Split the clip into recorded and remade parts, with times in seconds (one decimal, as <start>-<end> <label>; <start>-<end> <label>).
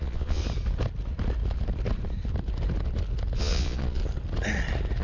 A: 0.0-0.4 remade; 0.4-3.4 recorded; 3.4-4.0 remade; 4.0-5.0 recorded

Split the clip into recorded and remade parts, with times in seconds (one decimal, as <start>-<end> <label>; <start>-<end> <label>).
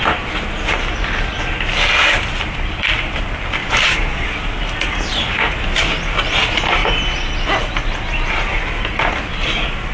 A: 0.0-3.6 recorded; 3.6-4.3 remade; 4.3-9.9 recorded